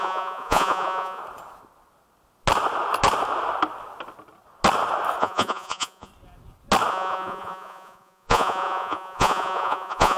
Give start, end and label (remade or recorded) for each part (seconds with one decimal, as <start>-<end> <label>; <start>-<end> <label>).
0.0-1.2 remade; 1.2-5.2 recorded; 5.2-6.1 remade; 6.1-6.9 recorded; 6.9-10.2 remade